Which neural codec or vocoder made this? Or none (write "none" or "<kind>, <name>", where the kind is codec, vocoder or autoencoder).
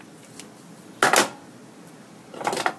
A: none